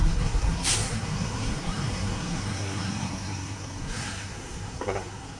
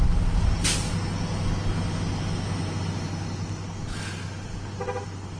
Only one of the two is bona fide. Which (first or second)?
second